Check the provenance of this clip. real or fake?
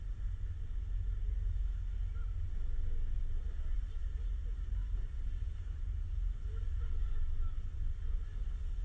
real